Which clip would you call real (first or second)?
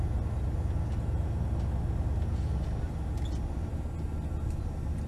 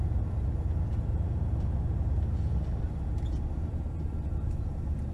first